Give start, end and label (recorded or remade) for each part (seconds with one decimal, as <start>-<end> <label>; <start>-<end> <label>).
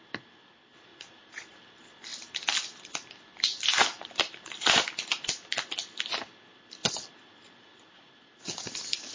0.0-0.9 recorded; 0.9-1.6 remade; 1.6-6.8 recorded; 6.8-8.4 remade; 8.4-9.1 recorded